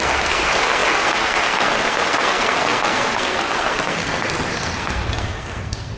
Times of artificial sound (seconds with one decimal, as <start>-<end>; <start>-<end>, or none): 0.0-6.0